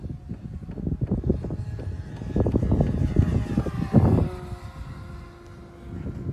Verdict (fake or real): real